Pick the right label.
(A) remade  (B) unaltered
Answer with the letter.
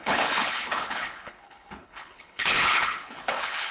A